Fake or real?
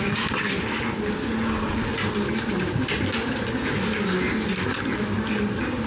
real